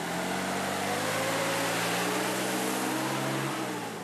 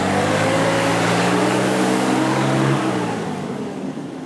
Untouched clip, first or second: first